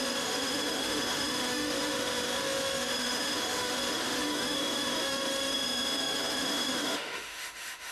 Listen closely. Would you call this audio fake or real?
fake